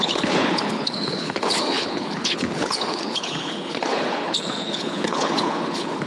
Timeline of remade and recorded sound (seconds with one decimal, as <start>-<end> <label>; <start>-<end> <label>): 0.0-6.1 remade